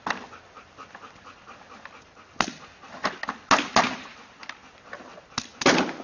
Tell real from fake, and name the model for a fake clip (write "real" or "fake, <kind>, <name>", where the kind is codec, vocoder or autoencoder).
real